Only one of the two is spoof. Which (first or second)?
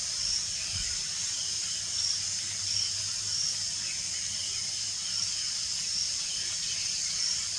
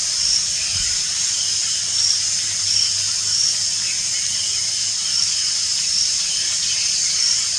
first